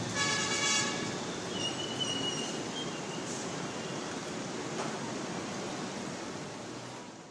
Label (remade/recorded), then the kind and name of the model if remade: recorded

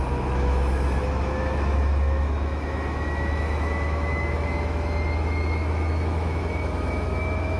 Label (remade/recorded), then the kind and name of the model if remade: remade, autoencoder, DAC-VAE